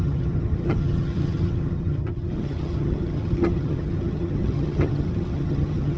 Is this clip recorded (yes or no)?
no